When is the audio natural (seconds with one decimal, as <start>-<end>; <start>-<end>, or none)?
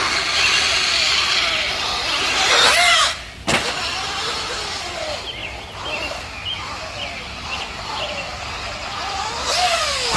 0.0-10.2